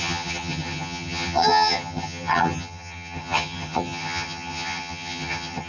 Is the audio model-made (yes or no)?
yes